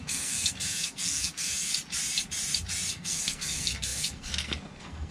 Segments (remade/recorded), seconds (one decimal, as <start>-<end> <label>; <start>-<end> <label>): 0.0-1.7 remade; 1.7-2.9 recorded; 2.9-5.1 remade

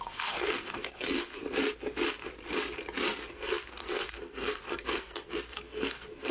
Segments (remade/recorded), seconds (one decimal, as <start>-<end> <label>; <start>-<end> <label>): 0.0-1.4 remade; 1.4-3.3 recorded; 3.3-6.3 remade

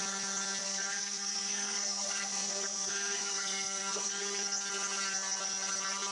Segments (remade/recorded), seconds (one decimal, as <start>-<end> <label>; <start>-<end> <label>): 0.0-0.6 recorded; 0.6-4.2 remade; 4.2-6.1 recorded

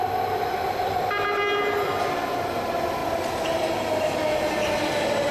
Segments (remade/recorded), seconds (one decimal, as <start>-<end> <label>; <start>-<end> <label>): 0.0-5.3 recorded

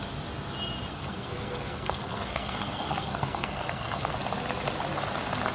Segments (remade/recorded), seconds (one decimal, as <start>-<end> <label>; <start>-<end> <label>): 0.0-0.9 recorded; 0.9-4.1 remade; 4.1-5.5 recorded

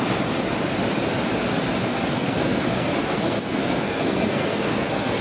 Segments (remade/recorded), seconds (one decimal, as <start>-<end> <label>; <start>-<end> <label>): 0.0-1.9 recorded; 1.9-5.2 remade

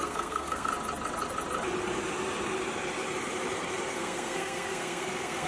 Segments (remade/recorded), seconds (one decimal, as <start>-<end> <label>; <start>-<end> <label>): 0.0-0.7 remade; 0.7-3.9 recorded; 3.9-5.5 remade